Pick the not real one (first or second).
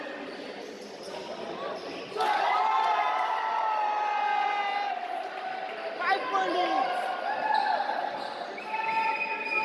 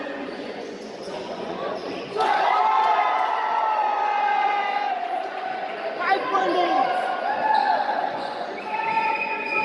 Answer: second